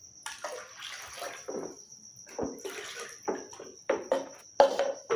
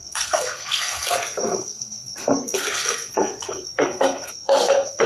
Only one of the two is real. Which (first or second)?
first